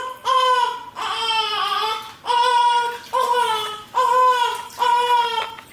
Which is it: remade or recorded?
recorded